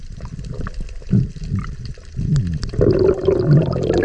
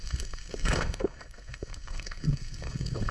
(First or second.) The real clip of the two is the first